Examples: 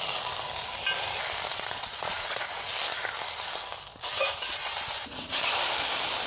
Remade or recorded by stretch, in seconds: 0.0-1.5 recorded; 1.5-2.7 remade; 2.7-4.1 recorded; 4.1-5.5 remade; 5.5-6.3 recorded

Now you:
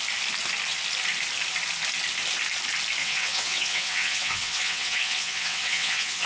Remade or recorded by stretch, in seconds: 0.0-3.0 recorded; 3.0-6.3 remade